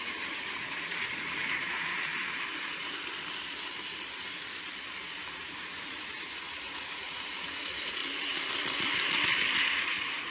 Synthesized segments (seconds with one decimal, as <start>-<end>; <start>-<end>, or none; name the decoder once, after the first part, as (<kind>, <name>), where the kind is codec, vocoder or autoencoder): 0.0-1.9 (vocoder, Vocos); 5.3-8.0; 9.6-10.3